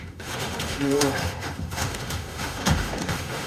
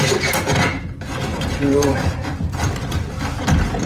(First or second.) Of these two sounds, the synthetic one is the first